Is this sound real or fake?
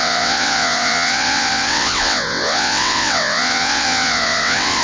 fake